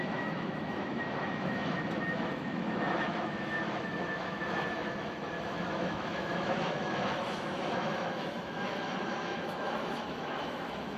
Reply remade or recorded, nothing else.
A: remade